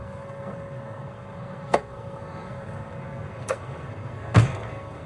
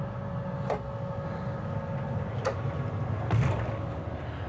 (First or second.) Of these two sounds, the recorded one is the second